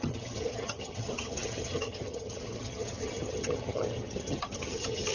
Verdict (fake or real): fake